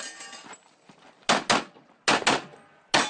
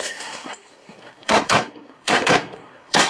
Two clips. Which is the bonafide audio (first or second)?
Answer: first